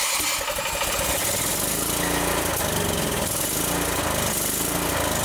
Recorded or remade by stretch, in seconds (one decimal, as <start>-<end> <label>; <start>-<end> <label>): 0.0-5.2 recorded